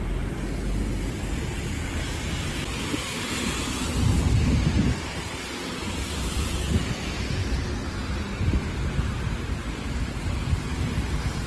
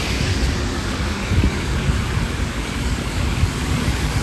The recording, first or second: first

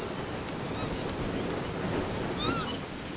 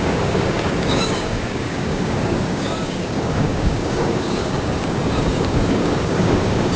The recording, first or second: first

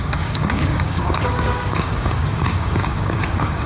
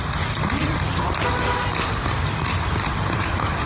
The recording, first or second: second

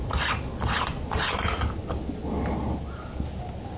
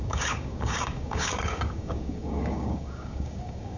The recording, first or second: first